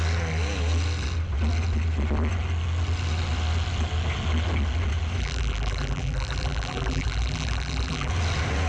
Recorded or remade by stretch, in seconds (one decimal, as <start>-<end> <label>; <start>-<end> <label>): 0.0-5.2 recorded; 5.2-8.1 remade; 8.1-8.7 recorded